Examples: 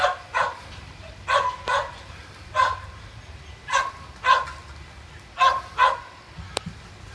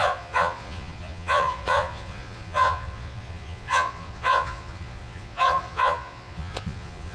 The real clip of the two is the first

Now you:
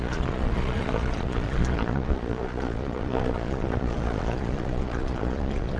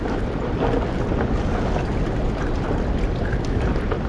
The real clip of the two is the second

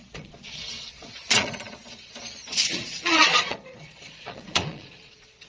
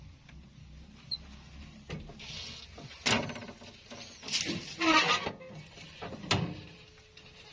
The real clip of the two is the second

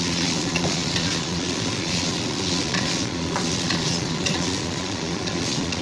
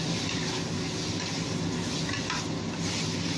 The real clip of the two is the second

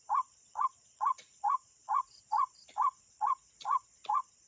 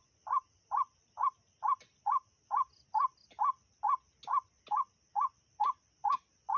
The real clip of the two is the second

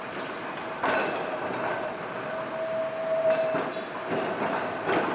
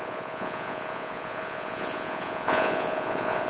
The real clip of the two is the first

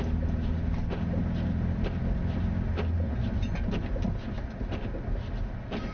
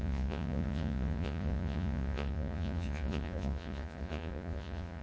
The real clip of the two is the first